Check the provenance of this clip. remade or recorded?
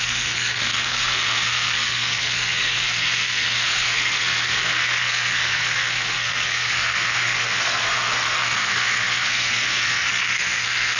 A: remade